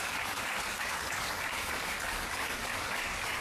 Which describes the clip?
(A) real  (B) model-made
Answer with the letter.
B